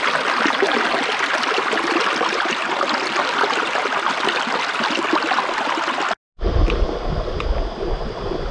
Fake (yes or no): no